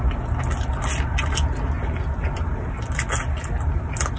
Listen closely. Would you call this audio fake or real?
real